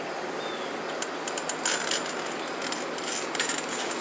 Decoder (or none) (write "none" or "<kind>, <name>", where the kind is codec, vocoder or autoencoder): none